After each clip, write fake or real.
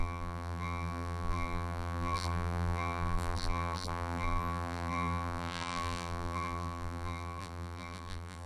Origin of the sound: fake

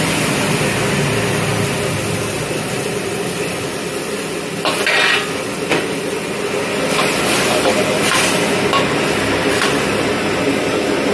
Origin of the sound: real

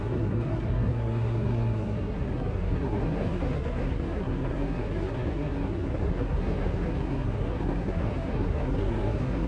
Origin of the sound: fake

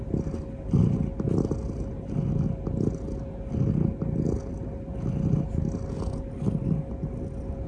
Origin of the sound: real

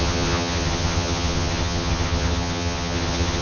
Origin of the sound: fake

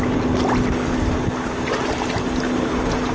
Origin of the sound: real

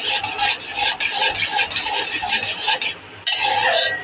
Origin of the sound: fake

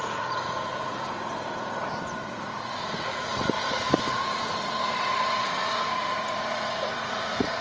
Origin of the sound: fake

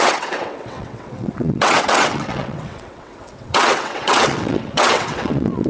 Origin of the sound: fake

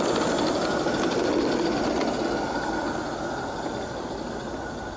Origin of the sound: real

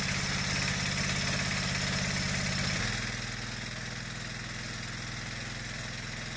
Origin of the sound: real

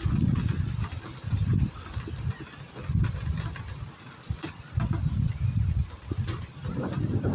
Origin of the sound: fake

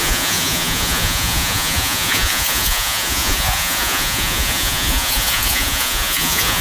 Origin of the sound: fake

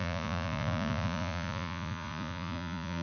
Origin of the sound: fake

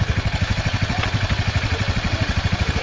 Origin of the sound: fake